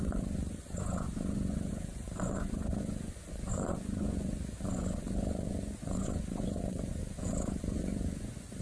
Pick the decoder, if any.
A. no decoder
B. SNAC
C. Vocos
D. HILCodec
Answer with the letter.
C